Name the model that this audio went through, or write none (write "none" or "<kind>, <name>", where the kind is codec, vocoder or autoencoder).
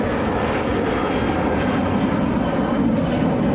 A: none